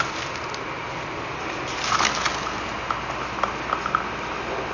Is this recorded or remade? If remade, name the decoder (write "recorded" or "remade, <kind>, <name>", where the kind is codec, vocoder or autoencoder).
recorded